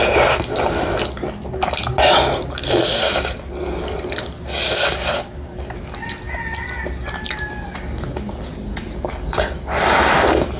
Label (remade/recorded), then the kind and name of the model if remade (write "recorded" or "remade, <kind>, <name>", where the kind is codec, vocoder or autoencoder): recorded